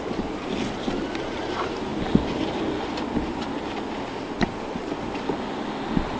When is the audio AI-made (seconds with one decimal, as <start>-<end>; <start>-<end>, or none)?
none